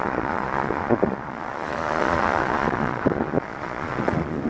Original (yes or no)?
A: no